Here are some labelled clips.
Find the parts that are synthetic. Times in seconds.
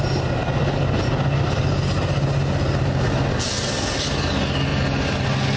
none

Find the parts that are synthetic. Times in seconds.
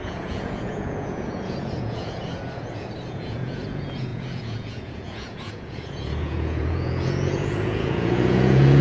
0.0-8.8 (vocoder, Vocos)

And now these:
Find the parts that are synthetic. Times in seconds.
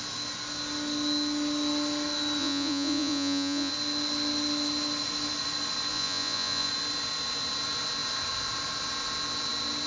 2.4-3.7 (vocoder, Vocos); 5.9-6.7